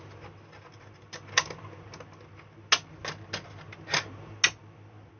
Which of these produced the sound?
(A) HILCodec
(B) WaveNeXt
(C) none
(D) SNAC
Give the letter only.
C